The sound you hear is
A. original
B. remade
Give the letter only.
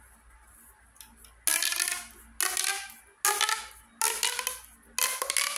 A